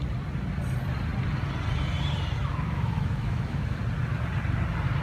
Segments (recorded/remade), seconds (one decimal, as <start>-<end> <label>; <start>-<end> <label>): 0.0-2.5 recorded; 2.5-3.8 remade; 3.8-5.0 recorded